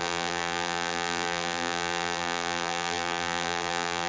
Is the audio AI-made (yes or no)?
yes